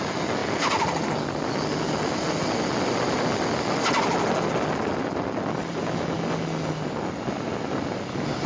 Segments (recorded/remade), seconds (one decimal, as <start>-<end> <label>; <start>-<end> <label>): 0.0-8.5 recorded